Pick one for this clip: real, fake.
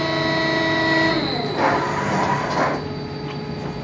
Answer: real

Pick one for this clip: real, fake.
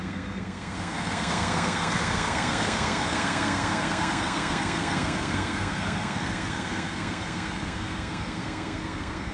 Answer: fake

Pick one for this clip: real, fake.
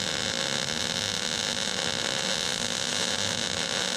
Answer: real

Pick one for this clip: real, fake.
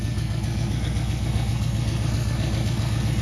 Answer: fake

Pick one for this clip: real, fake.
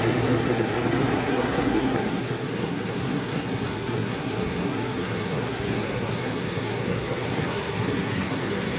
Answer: fake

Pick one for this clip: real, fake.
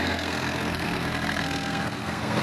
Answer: fake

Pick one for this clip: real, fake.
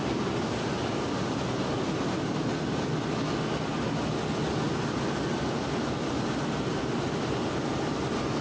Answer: real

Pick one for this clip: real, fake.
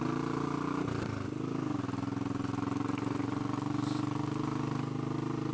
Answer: real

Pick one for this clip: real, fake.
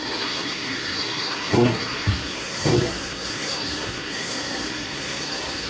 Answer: fake